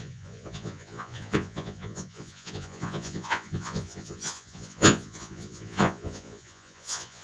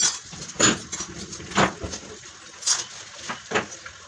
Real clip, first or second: second